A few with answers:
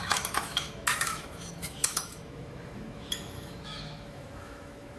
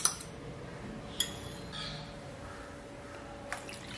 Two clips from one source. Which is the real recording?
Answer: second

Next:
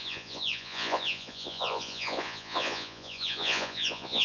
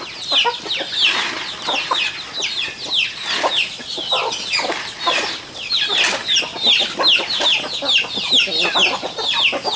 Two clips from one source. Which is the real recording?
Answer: second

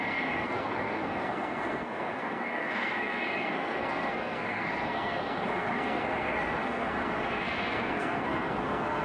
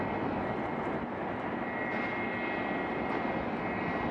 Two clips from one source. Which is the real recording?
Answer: second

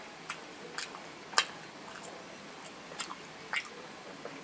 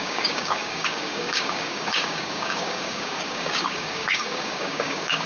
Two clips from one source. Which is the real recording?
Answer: first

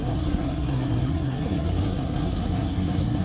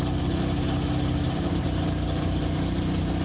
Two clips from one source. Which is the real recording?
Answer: second